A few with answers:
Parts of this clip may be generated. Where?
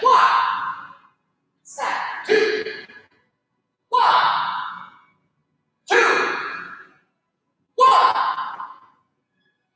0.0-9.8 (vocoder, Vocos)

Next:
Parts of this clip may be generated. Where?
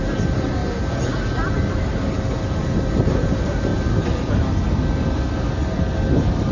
none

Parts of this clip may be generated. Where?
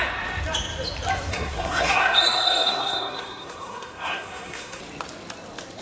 1.3-4.8 (codec, SNAC)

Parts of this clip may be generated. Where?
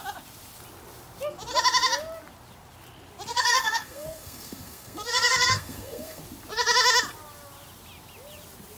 3.3-6.2 (codec, SNAC)